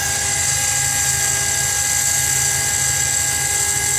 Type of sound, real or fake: real